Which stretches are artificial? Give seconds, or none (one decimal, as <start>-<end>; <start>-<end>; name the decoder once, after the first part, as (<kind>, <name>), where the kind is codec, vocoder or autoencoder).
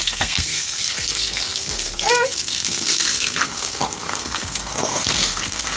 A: 0.0-5.8 (codec, SNAC)